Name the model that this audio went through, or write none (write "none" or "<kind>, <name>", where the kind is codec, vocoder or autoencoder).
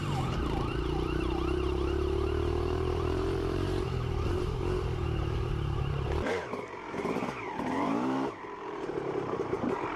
vocoder, BigVGAN v2